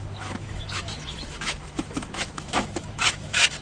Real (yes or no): no